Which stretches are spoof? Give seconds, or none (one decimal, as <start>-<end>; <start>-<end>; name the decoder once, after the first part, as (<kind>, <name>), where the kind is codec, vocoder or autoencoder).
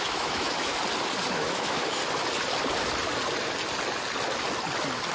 0.0-0.7 (autoencoder, DAC-VAE); 1.3-2.0